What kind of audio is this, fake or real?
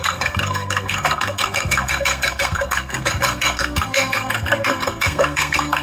fake